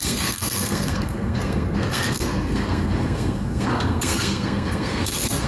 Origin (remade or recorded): remade